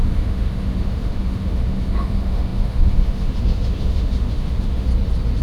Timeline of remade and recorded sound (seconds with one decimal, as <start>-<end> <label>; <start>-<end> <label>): 0.0-4.9 remade; 4.9-5.4 recorded